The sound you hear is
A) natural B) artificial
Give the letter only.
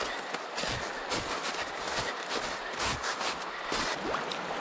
A